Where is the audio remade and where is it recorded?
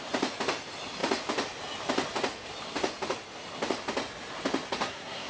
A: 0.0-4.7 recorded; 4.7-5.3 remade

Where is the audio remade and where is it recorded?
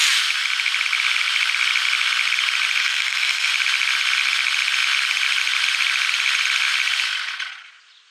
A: 0.0-2.8 recorded; 2.8-3.5 remade; 3.5-8.1 recorded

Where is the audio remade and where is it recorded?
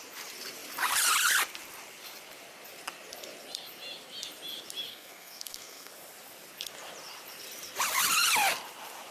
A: 0.0-4.9 recorded; 4.9-5.9 remade; 5.9-9.1 recorded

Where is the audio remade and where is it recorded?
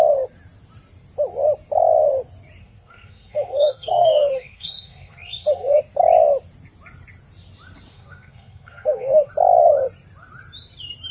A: 0.0-2.6 recorded; 2.6-5.8 remade; 5.8-7.9 recorded; 7.9-9.3 remade; 9.3-11.1 recorded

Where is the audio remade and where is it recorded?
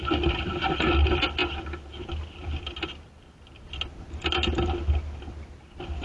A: 0.0-6.0 recorded